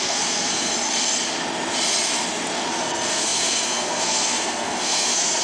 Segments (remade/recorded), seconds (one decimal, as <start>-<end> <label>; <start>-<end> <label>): 0.0-0.7 remade; 0.7-2.7 recorded; 2.7-5.4 remade